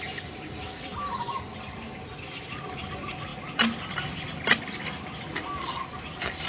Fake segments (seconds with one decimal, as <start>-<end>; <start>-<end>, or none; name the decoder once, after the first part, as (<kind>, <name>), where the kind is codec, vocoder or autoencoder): none